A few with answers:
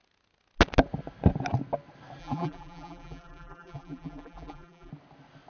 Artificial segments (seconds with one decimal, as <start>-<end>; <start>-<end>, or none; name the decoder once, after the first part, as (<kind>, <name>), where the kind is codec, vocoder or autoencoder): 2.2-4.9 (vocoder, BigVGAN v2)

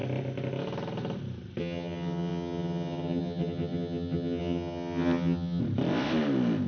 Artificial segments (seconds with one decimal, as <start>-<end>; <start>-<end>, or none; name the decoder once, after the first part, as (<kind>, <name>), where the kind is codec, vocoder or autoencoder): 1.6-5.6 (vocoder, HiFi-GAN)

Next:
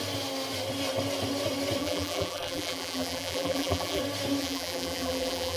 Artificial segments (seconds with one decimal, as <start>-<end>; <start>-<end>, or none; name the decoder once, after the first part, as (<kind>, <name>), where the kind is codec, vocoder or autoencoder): 1.8-4.0 (vocoder, BigVGAN v2); 4.4-5.6